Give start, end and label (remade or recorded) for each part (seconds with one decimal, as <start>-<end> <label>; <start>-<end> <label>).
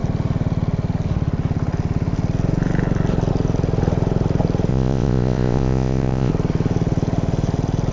0.0-4.7 recorded; 4.7-6.3 remade; 6.3-7.9 recorded